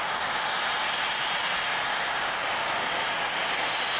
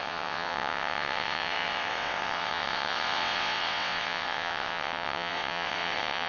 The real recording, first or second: first